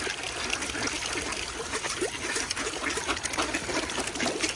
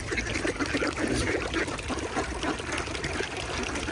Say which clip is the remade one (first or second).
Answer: second